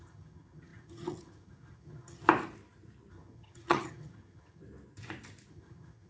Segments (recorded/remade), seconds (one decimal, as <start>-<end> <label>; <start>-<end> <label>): 0.0-2.2 remade; 2.2-3.1 recorded; 3.1-4.6 remade; 4.6-5.5 recorded; 5.5-6.1 remade